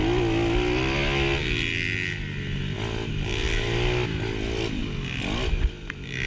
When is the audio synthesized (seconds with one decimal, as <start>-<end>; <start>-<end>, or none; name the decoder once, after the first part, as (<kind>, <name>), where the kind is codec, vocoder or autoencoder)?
none